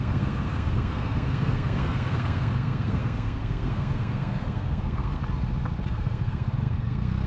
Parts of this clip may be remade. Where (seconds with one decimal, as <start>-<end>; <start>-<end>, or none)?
0.0-5.2; 5.9-7.3